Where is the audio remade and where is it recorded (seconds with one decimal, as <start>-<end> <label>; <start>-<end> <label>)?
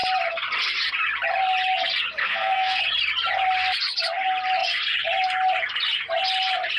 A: 0.0-2.2 recorded; 2.2-2.8 remade; 2.8-6.8 recorded